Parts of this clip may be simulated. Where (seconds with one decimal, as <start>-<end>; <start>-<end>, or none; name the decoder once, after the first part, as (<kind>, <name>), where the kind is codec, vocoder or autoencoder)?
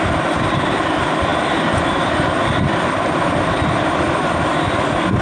none